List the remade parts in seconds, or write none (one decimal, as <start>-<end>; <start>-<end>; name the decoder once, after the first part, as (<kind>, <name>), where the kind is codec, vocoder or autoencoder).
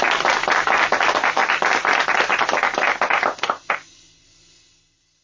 none